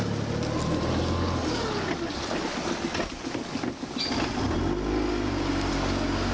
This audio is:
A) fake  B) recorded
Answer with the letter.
B